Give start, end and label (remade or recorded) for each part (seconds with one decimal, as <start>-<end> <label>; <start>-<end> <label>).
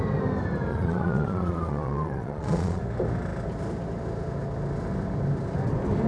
0.0-0.7 recorded; 0.7-2.8 remade; 2.8-6.1 recorded